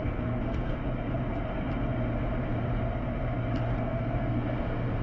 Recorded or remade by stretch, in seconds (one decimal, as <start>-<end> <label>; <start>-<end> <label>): 0.0-0.8 remade; 0.8-3.8 recorded; 3.8-5.0 remade